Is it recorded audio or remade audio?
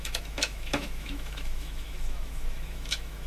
remade